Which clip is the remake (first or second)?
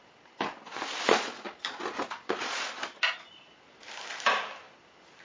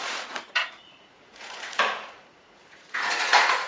second